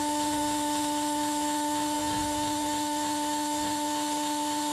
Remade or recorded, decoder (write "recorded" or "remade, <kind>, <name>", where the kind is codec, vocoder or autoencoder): remade, autoencoder, DAC-VAE